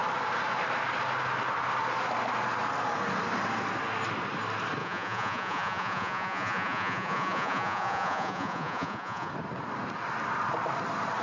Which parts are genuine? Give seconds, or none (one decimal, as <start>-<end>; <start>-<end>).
0.0-4.8; 9.3-11.2